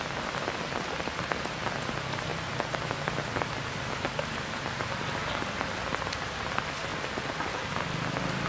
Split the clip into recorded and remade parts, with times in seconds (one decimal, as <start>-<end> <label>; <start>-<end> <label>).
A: 0.0-8.5 recorded